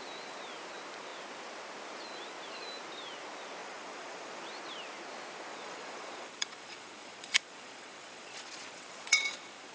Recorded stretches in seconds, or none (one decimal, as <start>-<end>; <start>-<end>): 0.0-3.6; 4.4-5.5